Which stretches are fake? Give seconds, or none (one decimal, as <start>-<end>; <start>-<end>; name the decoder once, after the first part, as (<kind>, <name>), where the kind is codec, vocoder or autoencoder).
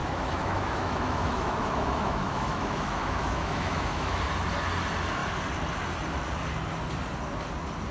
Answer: 0.0-4.2 (autoencoder, DAC-VAE)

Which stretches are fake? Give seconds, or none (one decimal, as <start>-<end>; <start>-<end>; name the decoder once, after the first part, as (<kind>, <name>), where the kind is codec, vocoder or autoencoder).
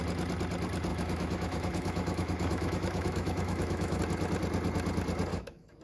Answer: 0.9-4.0 (autoencoder, DAC-VAE); 5.3-5.8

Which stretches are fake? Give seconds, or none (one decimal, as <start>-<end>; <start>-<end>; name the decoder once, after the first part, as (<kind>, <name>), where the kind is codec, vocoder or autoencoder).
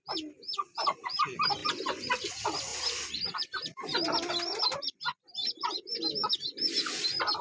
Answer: none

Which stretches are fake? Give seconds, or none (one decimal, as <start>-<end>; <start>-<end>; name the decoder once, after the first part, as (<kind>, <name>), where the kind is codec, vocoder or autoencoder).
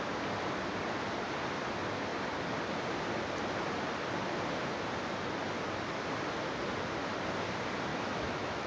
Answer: 7.9-8.7 (autoencoder, DAC-VAE)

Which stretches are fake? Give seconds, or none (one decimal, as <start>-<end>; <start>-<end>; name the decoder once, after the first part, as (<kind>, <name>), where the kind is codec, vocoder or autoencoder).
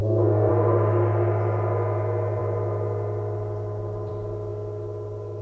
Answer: 0.0-0.5 (codec, SNAC)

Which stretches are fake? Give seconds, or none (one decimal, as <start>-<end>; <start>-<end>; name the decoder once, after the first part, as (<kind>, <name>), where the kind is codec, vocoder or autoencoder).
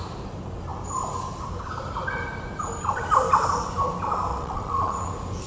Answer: 4.3-5.1 (vocoder, WaveNeXt)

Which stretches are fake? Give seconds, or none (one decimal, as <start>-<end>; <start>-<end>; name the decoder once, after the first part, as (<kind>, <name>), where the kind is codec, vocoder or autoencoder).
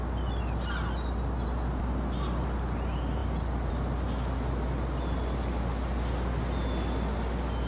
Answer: none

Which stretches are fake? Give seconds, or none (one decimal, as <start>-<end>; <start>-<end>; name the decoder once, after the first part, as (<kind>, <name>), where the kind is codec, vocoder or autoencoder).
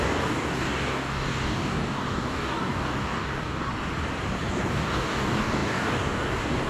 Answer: 0.0-3.7 (codec, DAC); 4.5-6.7